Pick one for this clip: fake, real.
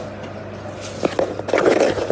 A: real